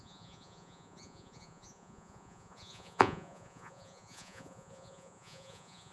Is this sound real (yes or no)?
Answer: no